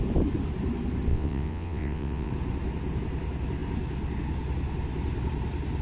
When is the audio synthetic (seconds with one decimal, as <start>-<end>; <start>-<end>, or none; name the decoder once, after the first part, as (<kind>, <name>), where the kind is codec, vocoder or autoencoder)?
1.1-2.3 (vocoder, WaveNeXt)